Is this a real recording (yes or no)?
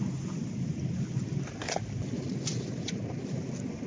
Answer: yes